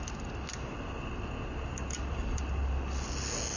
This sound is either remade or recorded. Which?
recorded